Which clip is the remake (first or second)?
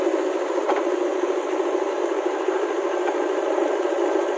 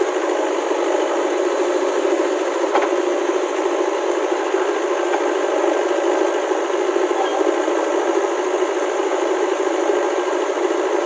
first